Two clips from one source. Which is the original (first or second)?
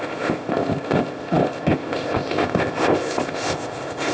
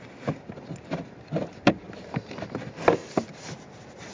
second